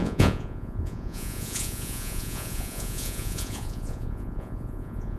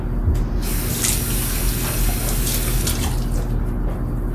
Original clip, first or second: second